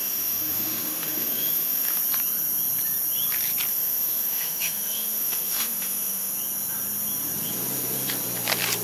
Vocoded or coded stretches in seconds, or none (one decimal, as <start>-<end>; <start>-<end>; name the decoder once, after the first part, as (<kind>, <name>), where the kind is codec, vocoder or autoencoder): 0.0-2.0 (autoencoder, DAC-VAE); 3.7-6.3